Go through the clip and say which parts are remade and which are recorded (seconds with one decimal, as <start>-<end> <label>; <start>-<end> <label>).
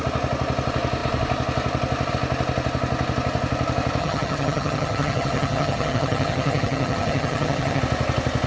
0.0-4.0 recorded; 4.0-7.8 remade; 7.8-8.5 recorded